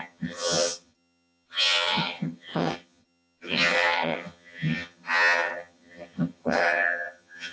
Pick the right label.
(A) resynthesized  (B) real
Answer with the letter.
A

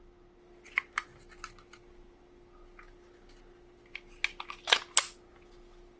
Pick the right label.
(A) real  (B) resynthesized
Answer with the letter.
A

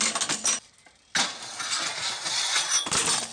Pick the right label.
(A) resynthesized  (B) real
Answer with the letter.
B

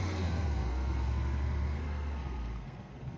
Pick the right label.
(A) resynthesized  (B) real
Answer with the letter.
A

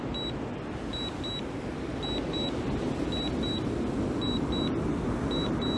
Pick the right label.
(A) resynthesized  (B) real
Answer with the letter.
B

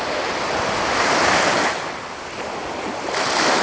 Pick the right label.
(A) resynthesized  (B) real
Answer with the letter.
B